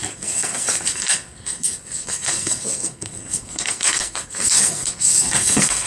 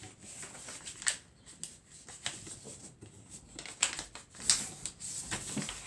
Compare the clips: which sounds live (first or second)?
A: second